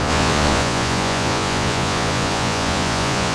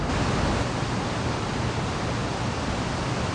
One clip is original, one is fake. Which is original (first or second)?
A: second